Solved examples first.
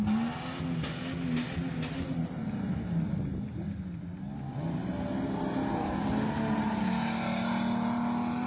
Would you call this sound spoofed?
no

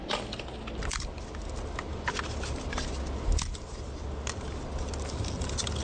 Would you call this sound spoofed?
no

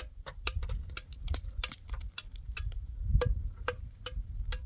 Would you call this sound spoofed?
no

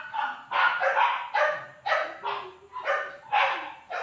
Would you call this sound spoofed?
no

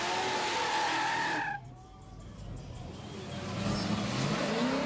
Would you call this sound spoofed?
no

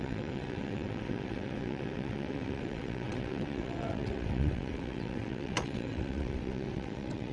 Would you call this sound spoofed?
yes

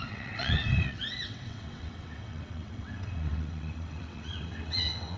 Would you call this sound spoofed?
yes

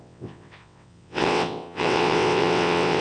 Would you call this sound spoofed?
yes